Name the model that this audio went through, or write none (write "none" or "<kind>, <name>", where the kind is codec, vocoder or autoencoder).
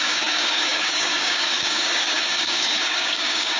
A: codec, DAC